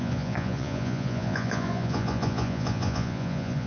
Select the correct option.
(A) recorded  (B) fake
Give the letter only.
B